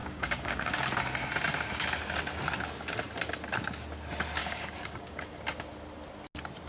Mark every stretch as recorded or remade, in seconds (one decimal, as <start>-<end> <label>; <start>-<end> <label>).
0.0-0.9 remade; 0.9-4.4 recorded; 4.4-5.4 remade; 5.4-6.7 recorded

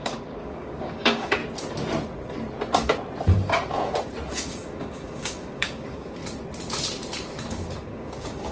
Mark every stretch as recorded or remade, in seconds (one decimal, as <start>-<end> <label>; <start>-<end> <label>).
0.0-1.4 remade; 1.4-4.3 recorded; 4.3-6.2 remade; 6.2-7.5 recorded; 7.5-8.5 remade

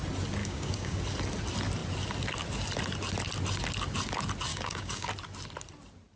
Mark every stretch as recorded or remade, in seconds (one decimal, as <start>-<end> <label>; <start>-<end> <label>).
0.0-0.4 recorded; 0.4-1.0 remade; 1.0-4.5 recorded; 4.5-5.1 remade; 5.1-6.2 recorded

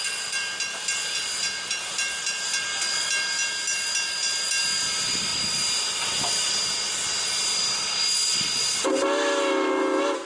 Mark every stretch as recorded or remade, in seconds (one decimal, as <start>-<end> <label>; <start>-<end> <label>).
0.0-10.3 recorded

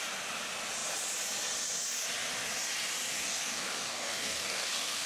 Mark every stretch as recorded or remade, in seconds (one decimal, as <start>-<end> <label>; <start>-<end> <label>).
0.0-3.2 recorded; 3.2-5.1 remade